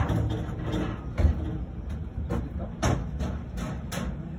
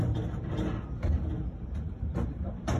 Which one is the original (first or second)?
first